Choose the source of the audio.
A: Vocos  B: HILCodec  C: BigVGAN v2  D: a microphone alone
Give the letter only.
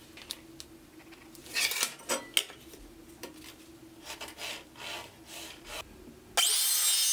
D